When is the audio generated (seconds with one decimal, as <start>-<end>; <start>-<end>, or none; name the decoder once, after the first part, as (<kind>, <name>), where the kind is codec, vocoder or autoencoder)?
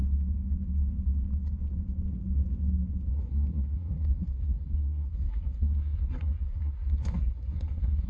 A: 3.1-8.1 (codec, SNAC)